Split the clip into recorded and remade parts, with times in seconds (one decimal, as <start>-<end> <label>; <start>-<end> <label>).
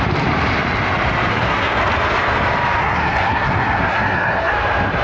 0.0-1.3 recorded; 1.3-1.8 remade; 1.8-2.8 recorded; 2.8-4.5 remade; 4.5-5.0 recorded